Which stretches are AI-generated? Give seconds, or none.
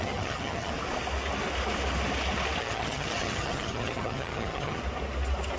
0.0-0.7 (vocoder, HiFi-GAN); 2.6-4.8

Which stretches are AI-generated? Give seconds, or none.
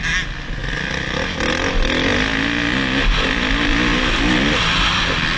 none